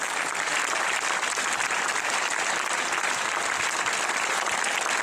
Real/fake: real